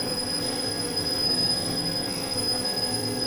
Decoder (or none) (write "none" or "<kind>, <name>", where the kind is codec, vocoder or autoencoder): codec, SNAC